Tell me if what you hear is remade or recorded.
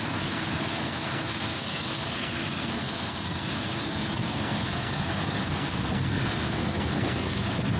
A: remade